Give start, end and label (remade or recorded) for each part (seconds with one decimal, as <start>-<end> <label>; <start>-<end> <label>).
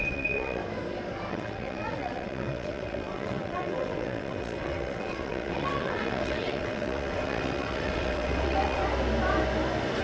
0.0-0.6 remade; 0.6-1.3 recorded; 1.3-8.8 remade; 8.8-10.0 recorded